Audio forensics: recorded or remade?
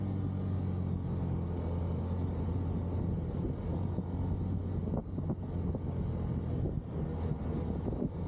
recorded